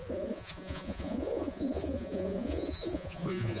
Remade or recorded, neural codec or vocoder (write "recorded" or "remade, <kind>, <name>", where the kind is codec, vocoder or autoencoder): remade, vocoder, Vocos